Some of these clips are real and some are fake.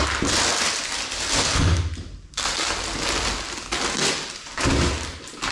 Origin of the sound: real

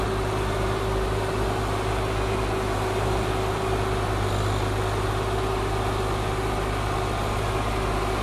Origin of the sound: real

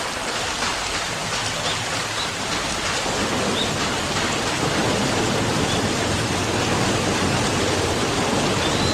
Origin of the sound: real